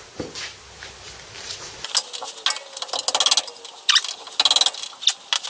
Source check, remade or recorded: recorded